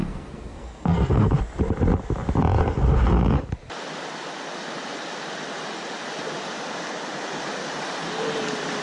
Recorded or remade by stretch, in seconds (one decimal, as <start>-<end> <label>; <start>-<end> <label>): 0.0-1.3 remade; 1.3-8.8 recorded